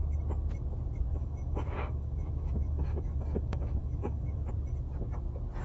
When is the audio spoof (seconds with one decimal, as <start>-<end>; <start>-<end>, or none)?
1.1-4.5